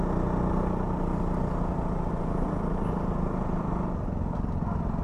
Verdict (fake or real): real